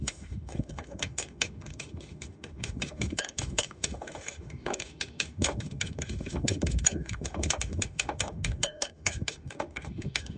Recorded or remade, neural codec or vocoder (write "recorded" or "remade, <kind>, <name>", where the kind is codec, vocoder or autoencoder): remade, autoencoder, DAC-VAE